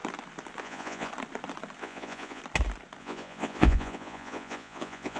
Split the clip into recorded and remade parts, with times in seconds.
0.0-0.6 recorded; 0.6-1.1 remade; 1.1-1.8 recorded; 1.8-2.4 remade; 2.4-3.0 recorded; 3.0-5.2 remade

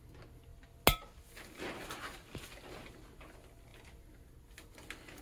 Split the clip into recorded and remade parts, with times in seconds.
0.0-5.2 recorded